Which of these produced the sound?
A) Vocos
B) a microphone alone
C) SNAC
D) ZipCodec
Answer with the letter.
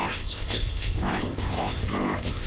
D